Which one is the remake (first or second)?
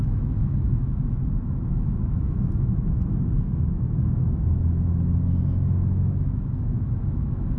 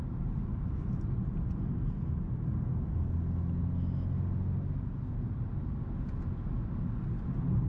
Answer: first